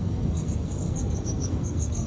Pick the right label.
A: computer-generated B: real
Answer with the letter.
A